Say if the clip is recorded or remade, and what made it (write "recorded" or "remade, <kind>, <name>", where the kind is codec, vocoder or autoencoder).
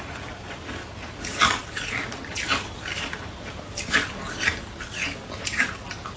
remade, vocoder, BigVGAN v2